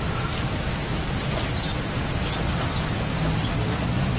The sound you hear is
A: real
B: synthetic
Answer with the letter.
B